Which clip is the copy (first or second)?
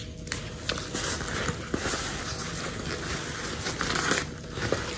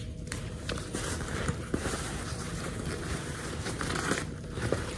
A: second